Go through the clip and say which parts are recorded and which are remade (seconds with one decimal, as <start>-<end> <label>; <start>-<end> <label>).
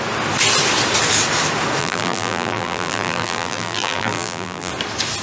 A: 0.0-1.8 recorded; 1.8-4.7 remade; 4.7-5.2 recorded